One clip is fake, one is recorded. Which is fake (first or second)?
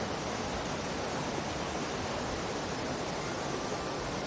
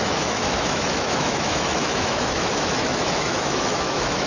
second